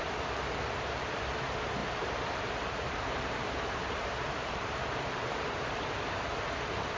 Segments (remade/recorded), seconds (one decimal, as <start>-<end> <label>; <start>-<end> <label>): 0.0-1.8 recorded; 1.8-6.0 remade; 6.0-7.0 recorded